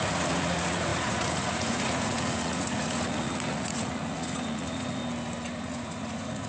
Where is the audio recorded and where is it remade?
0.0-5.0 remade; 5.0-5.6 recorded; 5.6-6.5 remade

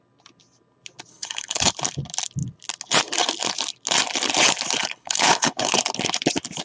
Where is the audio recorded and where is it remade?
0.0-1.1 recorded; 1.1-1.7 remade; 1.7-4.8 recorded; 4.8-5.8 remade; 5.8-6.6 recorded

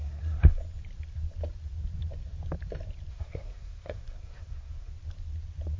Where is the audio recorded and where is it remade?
0.0-0.6 remade; 0.6-3.1 recorded; 3.1-4.9 remade; 4.9-5.8 recorded

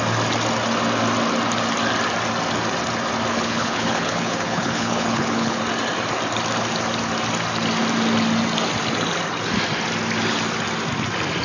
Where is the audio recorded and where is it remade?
0.0-3.3 recorded; 3.3-5.6 remade; 5.6-11.4 recorded

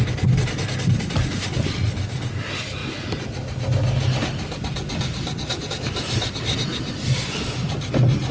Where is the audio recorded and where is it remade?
0.0-8.3 recorded